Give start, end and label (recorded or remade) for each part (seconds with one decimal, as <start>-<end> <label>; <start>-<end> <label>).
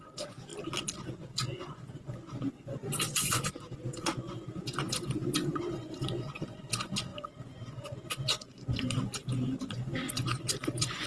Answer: 0.0-0.5 remade; 0.5-1.1 recorded; 1.1-11.1 remade